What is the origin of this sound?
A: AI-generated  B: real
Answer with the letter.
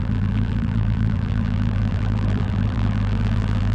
A